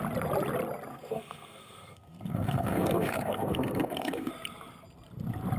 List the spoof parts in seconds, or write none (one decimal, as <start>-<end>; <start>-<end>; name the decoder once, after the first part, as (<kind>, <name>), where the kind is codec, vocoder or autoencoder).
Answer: 0.9-4.3 (codec, SNAC)

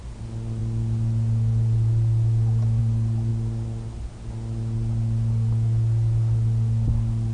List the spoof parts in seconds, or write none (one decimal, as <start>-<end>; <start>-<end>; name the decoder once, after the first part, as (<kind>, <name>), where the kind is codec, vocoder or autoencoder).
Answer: none

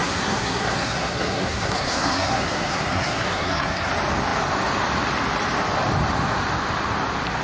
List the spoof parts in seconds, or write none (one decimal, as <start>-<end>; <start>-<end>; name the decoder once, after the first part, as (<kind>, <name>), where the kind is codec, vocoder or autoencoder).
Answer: 0.0-3.9 (codec, SNAC)

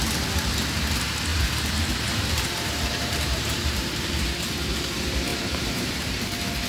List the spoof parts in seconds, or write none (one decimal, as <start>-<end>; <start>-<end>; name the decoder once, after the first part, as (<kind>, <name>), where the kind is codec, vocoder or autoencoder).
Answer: 1.3-4.1 (vocoder, BigVGAN v2); 5.3-5.9

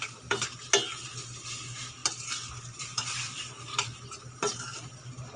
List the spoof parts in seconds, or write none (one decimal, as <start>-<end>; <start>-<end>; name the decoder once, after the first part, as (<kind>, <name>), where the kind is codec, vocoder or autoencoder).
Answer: 3.7-5.4 (vocoder, BigVGAN v2)

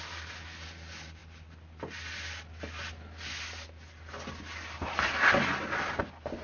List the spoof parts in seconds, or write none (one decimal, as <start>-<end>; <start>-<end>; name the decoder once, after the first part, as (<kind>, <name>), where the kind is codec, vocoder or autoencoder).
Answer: none

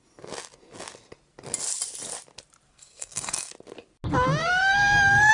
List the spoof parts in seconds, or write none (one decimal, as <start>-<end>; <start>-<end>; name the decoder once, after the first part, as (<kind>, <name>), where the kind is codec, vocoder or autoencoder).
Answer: 2.7-3.5 (codec, SNAC); 4.4-5.3

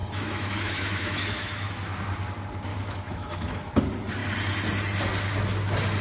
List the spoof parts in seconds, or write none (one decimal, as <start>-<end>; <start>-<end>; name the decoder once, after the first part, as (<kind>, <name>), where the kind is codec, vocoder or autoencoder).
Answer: 0.0-1.7 (autoencoder, DAC-VAE); 2.7-3.8